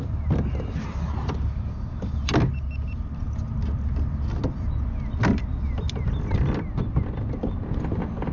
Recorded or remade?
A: recorded